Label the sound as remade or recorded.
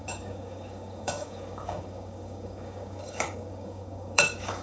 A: remade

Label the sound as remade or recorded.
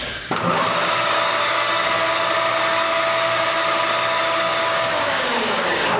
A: remade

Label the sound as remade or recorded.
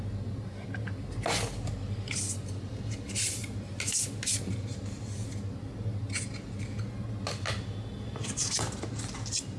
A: recorded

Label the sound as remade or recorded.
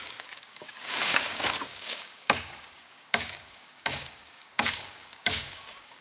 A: remade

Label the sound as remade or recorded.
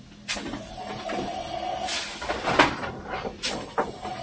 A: recorded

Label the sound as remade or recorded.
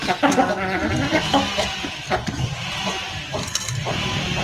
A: recorded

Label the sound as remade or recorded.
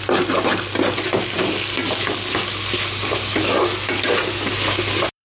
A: recorded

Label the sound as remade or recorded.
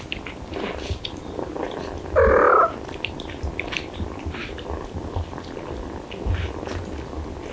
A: recorded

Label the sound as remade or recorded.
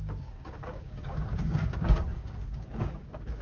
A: remade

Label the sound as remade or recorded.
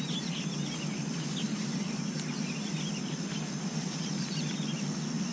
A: recorded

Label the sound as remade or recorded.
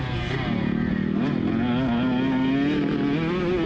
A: recorded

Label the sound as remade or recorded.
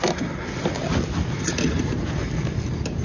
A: recorded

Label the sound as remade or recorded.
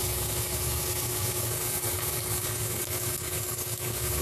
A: remade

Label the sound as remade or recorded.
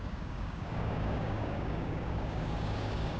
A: remade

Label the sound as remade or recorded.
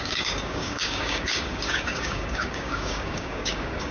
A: remade